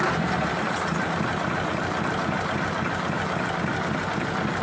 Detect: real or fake real